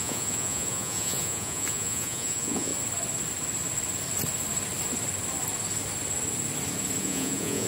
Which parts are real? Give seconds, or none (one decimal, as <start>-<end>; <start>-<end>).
2.7-7.0